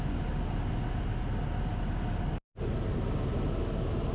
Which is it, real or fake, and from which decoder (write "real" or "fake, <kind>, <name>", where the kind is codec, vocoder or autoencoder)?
real